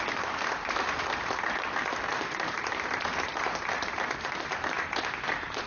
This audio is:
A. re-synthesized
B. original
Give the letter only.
A